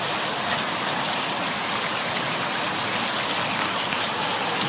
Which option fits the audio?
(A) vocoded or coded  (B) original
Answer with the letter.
B